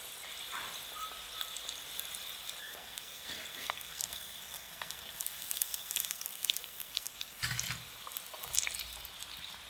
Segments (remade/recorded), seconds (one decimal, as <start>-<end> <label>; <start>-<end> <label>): 0.0-2.6 recorded; 2.6-7.4 remade; 7.4-9.7 recorded